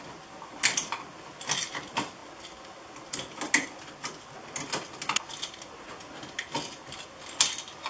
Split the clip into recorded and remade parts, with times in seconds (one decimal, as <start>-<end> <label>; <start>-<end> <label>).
0.0-7.9 recorded